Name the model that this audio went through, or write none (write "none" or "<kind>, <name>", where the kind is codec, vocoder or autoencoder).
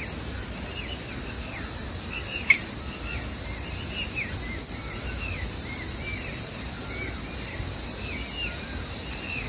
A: none